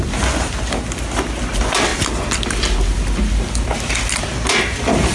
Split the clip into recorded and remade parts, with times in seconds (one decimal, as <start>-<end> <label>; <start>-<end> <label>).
0.0-5.1 recorded